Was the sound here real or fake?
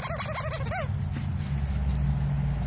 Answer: real